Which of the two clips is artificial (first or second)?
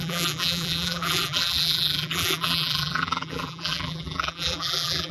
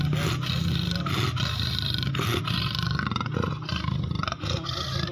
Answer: first